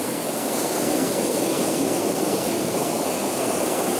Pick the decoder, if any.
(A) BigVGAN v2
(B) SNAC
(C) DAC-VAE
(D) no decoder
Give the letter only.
B